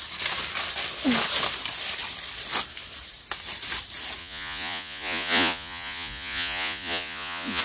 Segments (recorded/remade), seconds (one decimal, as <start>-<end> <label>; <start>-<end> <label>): 0.0-4.2 recorded; 4.2-7.6 remade